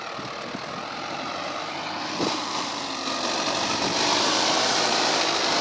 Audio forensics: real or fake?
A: fake